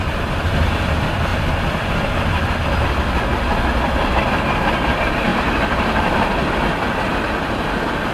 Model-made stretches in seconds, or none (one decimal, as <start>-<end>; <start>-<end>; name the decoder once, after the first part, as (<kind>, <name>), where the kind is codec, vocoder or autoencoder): 5.3-6.5 (vocoder, BigVGAN v2)